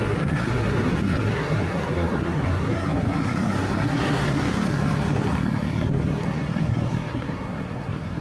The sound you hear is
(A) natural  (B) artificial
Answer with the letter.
B